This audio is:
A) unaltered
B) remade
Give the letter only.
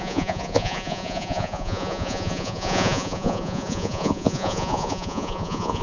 B